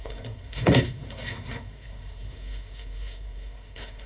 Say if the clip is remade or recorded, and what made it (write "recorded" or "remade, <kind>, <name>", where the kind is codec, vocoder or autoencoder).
remade, codec, SNAC